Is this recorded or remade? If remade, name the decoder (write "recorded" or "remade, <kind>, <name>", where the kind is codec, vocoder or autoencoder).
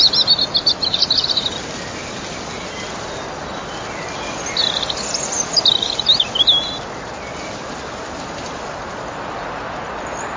recorded